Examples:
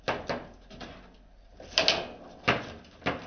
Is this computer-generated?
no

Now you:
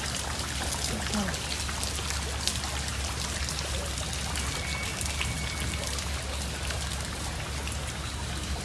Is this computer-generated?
no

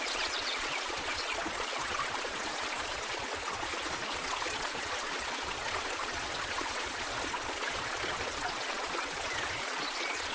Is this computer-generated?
yes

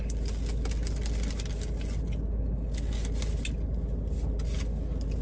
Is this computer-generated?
no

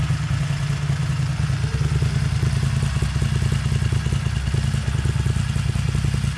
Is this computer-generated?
no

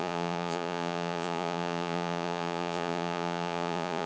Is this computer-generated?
yes